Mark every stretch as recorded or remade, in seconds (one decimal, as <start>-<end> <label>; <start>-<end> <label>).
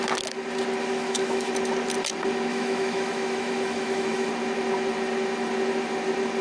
0.0-0.8 recorded; 0.8-1.5 remade; 1.5-2.5 recorded; 2.5-4.3 remade; 4.3-6.4 recorded